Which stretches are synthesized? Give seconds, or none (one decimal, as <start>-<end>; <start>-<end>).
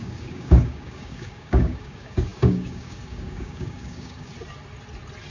0.0-4.3